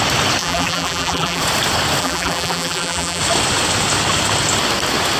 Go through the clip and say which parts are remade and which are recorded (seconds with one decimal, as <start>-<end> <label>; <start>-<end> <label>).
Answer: 0.0-0.4 recorded; 0.4-1.4 remade; 1.4-2.0 recorded; 2.0-3.2 remade; 3.2-5.2 recorded